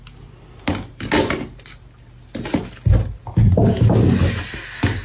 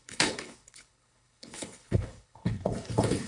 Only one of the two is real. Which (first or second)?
first